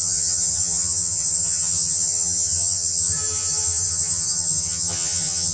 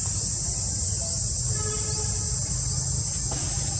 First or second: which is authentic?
second